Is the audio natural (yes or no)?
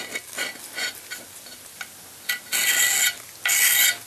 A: yes